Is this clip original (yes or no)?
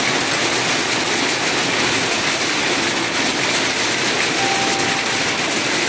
yes